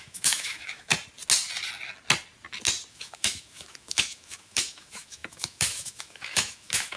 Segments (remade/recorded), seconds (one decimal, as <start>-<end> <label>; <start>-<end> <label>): 0.0-0.9 remade; 0.9-2.9 recorded; 2.9-7.0 remade

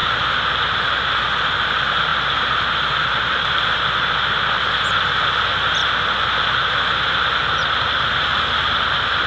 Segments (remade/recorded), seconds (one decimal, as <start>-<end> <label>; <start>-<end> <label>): 0.0-9.3 recorded